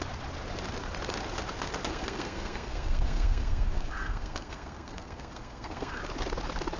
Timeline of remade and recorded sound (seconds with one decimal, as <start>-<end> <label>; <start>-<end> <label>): 0.0-1.9 recorded; 1.9-6.0 remade; 6.0-6.8 recorded